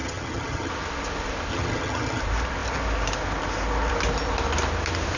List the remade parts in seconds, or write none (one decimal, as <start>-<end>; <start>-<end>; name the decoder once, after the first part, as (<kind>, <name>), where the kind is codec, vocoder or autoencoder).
0.0-0.7 (vocoder, HiFi-GAN); 1.5-2.2